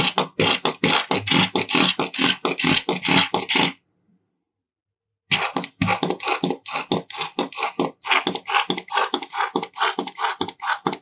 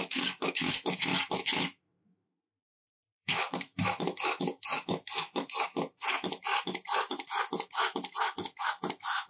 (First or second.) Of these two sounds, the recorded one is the first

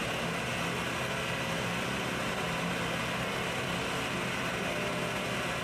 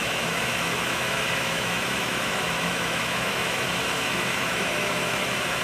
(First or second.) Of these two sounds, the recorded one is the first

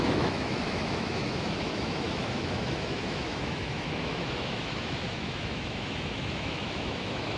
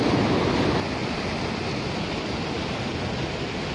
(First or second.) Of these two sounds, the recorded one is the second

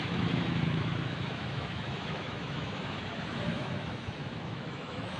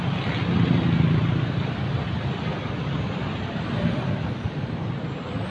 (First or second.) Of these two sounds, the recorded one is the second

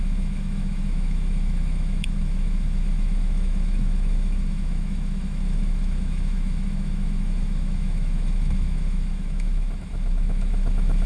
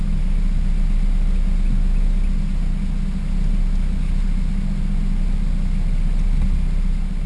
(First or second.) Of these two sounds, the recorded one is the second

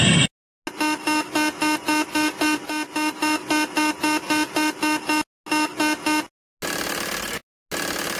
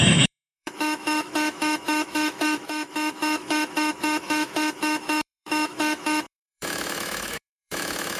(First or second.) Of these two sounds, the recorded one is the first